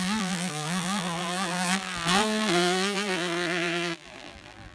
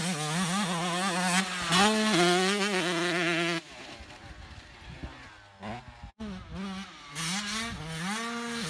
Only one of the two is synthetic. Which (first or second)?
first